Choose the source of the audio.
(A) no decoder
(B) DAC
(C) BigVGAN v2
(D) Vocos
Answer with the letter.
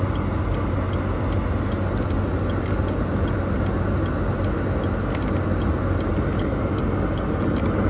A